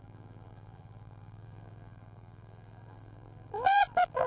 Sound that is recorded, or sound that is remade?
remade